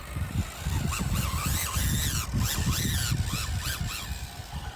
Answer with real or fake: real